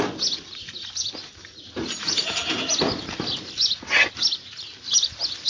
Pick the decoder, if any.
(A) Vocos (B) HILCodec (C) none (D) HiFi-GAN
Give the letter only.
C